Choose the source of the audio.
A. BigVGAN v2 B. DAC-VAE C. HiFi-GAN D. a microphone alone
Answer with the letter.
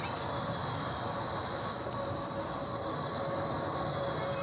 D